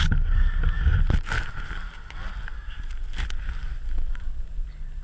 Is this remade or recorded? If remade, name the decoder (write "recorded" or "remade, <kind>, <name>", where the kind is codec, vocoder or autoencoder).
recorded